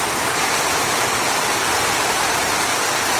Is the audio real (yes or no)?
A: yes